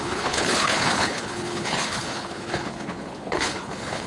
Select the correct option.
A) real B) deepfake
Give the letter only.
B